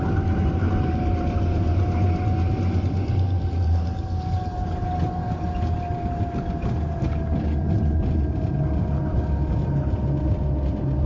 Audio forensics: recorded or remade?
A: recorded